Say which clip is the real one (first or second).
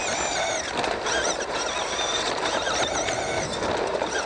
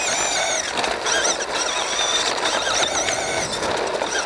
second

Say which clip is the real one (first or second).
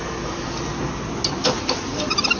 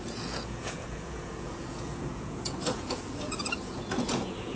first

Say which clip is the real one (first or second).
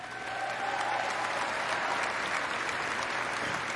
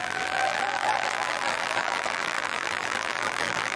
first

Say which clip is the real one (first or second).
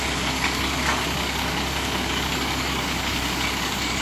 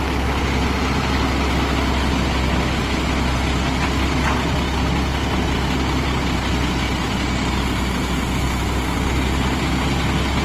second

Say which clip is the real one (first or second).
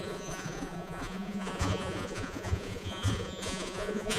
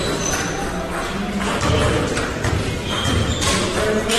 second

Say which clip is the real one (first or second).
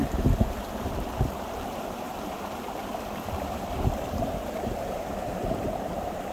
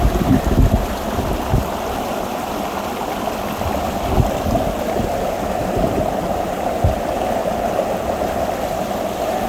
second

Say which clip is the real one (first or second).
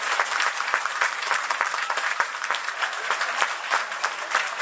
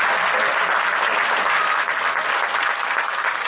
second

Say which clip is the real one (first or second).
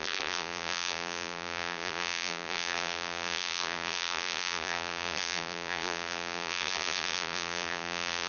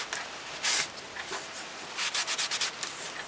second